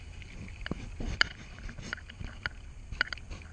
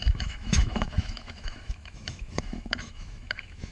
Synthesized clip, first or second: second